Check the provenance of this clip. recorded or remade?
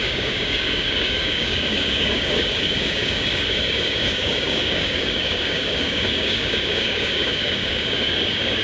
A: remade